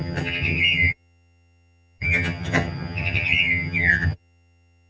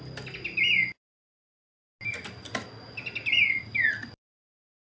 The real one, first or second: second